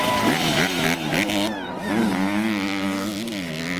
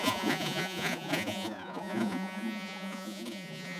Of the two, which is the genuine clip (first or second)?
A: first